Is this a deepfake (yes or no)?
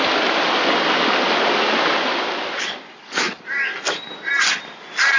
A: no